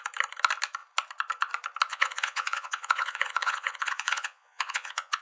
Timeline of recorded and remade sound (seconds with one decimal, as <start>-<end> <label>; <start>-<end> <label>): 0.0-1.9 recorded; 1.9-5.2 remade